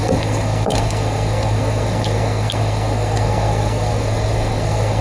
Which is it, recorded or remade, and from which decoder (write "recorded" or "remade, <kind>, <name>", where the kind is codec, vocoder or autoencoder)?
remade, codec, SNAC